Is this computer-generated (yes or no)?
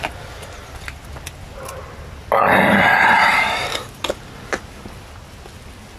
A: no